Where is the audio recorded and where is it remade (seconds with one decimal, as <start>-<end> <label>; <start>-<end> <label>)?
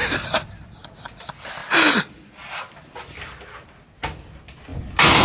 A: 0.0-5.2 recorded